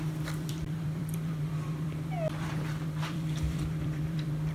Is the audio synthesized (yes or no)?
yes